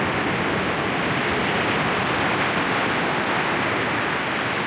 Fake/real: real